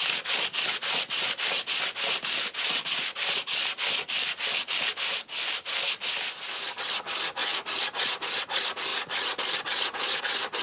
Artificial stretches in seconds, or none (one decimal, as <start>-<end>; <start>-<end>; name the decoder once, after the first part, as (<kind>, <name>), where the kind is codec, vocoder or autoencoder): none